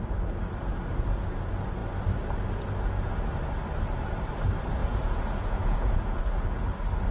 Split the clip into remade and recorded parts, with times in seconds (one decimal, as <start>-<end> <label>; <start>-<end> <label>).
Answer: 0.0-4.8 recorded; 4.8-6.2 remade; 6.2-7.1 recorded